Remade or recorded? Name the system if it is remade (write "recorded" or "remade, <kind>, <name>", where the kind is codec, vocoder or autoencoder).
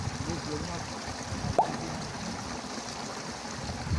recorded